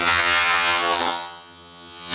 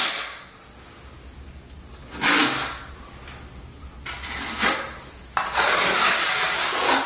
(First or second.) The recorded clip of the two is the second